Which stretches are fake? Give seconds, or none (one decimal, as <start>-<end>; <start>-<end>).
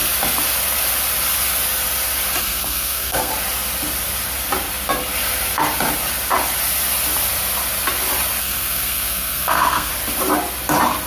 2.4-3.3; 8.4-9.9